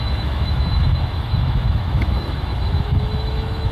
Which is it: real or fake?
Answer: fake